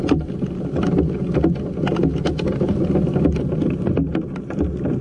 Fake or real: real